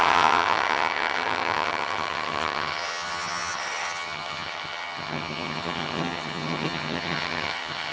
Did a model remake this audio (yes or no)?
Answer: yes